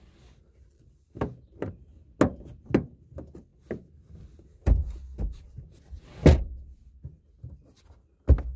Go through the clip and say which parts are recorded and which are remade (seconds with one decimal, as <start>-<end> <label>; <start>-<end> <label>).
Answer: 0.0-8.6 recorded